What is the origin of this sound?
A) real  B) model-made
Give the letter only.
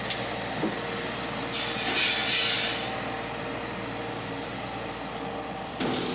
A